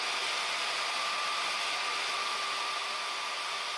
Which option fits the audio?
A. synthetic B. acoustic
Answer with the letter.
B